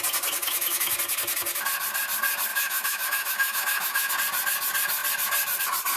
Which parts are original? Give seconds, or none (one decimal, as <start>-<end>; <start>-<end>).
0.0-0.4; 0.9-2.5; 4.1-6.0